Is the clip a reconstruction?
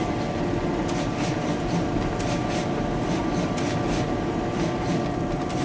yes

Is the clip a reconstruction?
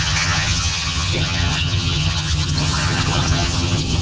yes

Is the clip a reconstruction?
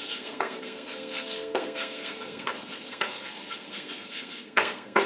yes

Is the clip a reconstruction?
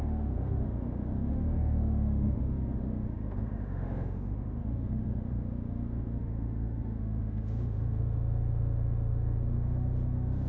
yes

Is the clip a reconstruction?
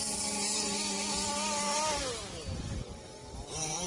no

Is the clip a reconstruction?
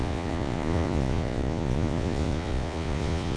yes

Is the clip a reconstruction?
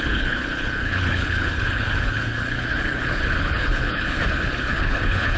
yes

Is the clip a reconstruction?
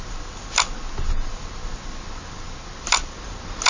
no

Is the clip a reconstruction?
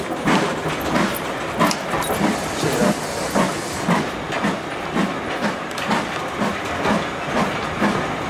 no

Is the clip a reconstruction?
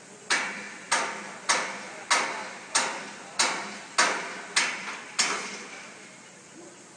no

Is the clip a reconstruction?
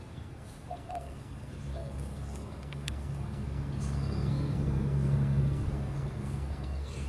yes